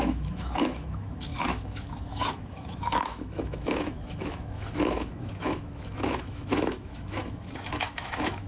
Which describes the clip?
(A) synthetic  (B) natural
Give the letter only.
A